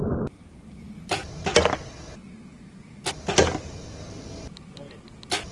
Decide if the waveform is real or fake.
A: real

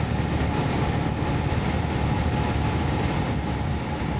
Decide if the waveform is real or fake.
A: real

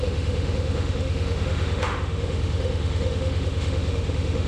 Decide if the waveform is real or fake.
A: fake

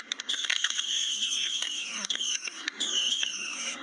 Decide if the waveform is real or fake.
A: fake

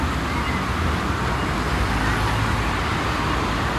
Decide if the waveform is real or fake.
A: real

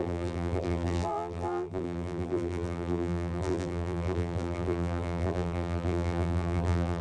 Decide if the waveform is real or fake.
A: fake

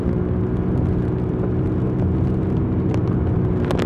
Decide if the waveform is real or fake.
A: real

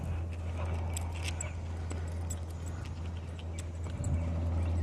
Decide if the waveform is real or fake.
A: real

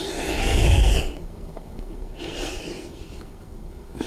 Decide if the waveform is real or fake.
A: fake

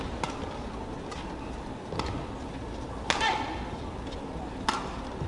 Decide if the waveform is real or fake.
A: real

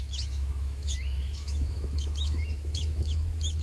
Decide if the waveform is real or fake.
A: fake